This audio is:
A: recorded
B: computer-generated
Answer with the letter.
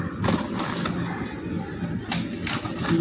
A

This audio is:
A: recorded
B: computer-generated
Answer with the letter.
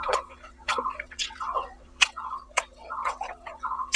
B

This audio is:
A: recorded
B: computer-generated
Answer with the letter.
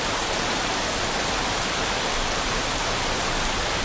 A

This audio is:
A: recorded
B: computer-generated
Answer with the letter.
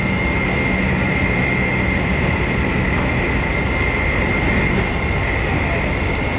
A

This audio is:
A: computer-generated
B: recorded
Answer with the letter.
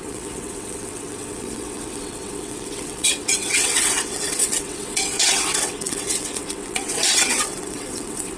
A